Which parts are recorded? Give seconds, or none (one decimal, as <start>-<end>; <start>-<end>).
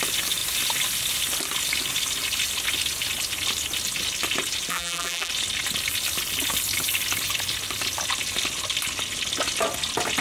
0.0-4.7; 5.3-10.2